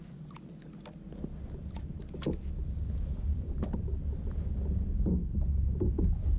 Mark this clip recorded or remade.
recorded